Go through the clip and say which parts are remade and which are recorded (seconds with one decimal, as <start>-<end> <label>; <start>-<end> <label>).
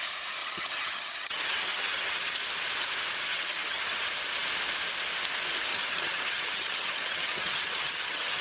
0.0-0.4 recorded; 0.4-2.4 remade; 2.4-3.3 recorded; 3.3-4.0 remade; 4.0-5.7 recorded; 5.7-8.4 remade